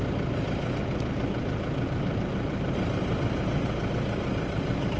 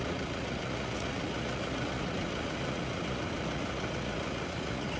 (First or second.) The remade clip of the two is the second